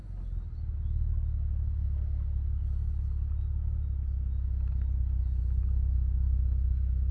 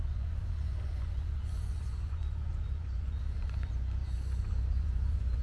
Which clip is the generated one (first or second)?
second